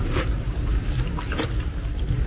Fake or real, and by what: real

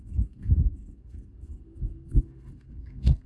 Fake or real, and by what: fake, codec, SNAC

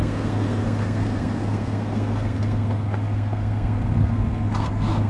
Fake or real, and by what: fake, codec, SNAC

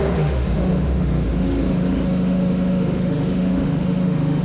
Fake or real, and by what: fake, autoencoder, DAC-VAE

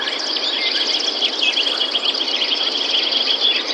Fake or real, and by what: real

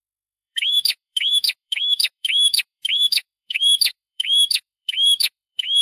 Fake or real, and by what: fake, autoencoder, DAC-VAE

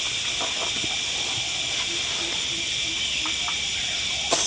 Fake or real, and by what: real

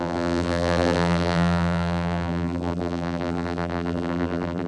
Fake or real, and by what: fake, vocoder, BigVGAN v2